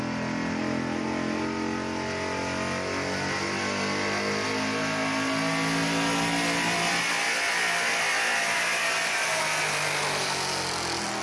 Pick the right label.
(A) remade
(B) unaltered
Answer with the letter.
B